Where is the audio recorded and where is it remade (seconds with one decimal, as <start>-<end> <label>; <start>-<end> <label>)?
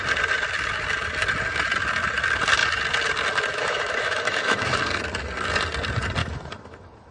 0.0-3.5 recorded; 3.5-4.8 remade; 4.8-6.2 recorded; 6.2-7.1 remade